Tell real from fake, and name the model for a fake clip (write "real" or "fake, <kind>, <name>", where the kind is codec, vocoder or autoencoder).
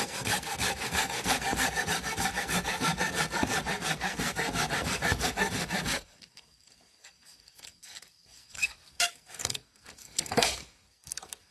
fake, codec, SNAC